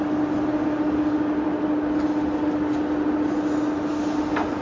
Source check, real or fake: real